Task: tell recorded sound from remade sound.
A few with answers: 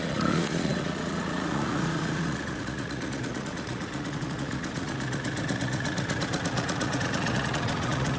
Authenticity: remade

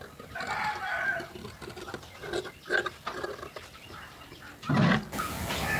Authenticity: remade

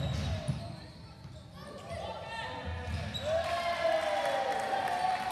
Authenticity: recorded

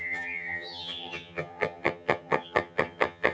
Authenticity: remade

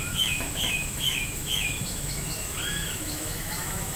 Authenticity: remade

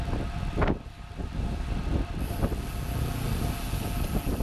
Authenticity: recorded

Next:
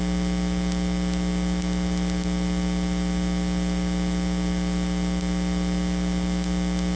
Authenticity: recorded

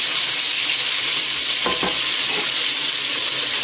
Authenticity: recorded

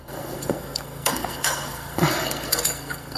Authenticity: remade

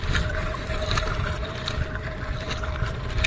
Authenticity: remade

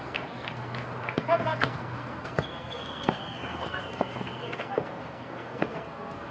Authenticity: remade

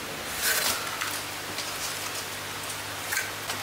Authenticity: recorded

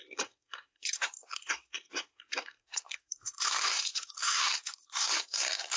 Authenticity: remade